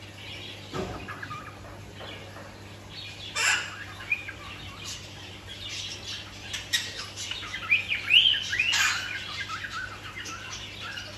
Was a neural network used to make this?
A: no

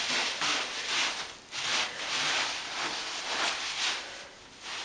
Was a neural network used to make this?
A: no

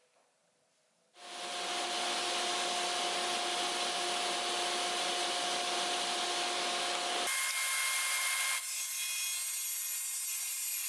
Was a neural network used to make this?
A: no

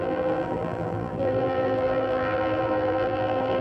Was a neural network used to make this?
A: yes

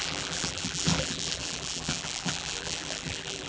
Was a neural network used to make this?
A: yes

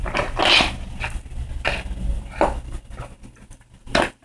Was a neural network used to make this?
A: no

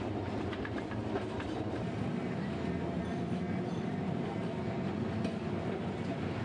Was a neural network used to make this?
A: yes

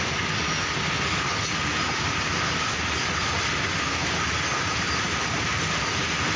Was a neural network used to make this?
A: no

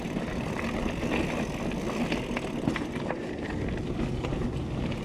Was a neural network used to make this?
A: no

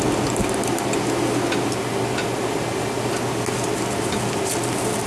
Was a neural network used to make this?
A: no